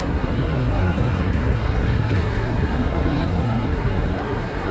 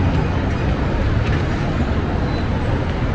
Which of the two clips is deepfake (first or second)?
first